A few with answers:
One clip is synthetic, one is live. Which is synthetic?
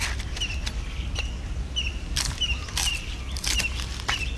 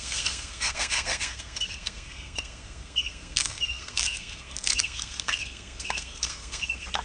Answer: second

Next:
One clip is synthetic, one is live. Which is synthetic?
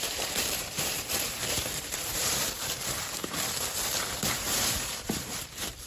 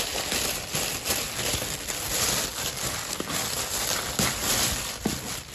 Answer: first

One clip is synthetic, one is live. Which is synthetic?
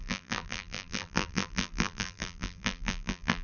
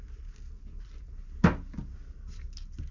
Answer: first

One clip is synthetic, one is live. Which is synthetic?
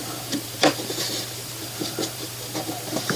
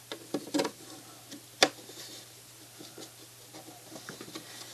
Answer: first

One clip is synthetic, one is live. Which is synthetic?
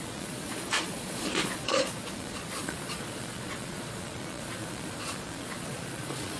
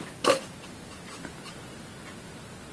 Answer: first